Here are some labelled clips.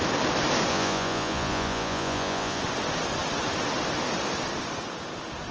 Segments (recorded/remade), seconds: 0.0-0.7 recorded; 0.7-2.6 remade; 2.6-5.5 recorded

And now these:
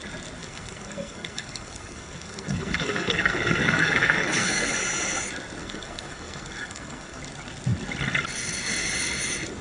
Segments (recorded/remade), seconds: 0.0-0.4 recorded; 0.4-4.7 remade; 4.7-5.6 recorded; 5.6-7.2 remade; 7.2-9.6 recorded

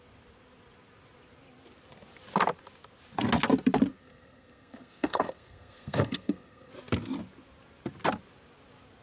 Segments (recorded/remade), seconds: 0.0-3.9 recorded; 3.9-6.7 remade; 6.7-9.0 recorded

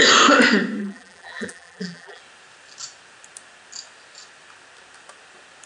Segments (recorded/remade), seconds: 0.0-0.8 recorded; 0.8-2.2 remade; 2.2-5.7 recorded

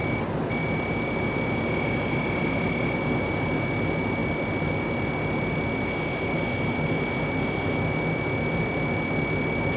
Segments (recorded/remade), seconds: 0.0-9.8 recorded

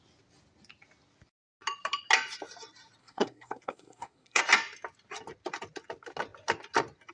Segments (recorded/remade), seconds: 0.0-3.0 recorded; 3.0-4.4 remade; 4.4-7.1 recorded

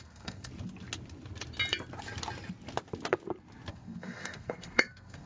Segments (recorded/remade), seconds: 0.0-0.5 remade; 0.5-3.7 recorded; 3.7-5.3 remade